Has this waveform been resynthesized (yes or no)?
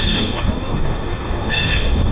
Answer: yes